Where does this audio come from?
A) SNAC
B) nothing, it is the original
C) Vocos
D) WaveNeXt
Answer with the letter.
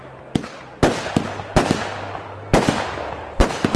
B